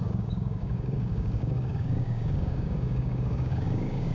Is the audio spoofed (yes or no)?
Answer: yes